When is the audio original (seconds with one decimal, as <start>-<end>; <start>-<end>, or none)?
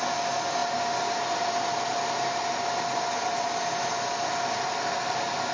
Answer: 0.0-5.5